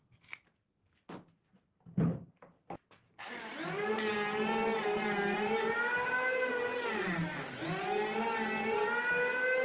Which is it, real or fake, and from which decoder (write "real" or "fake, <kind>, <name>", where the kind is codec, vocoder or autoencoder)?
real